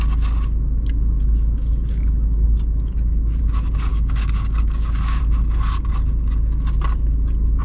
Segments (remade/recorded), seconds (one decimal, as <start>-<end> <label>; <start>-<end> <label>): 0.0-1.2 recorded; 1.2-3.4 remade; 3.4-3.9 recorded; 3.9-5.2 remade; 5.2-7.6 recorded